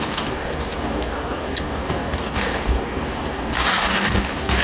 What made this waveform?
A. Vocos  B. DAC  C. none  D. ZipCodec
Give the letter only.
B